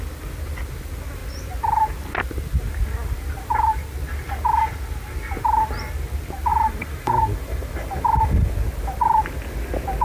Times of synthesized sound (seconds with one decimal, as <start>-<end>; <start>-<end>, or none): 6.5-8.5